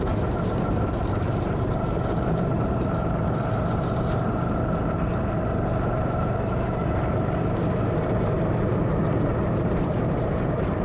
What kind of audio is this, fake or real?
fake